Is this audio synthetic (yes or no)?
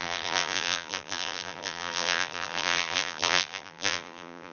yes